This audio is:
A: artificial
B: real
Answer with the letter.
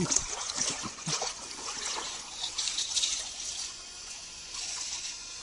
A